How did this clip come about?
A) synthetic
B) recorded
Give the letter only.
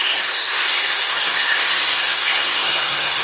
A